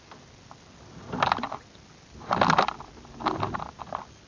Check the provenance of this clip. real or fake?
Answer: real